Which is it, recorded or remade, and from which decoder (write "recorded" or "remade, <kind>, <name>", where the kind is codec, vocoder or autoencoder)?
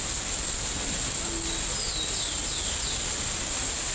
recorded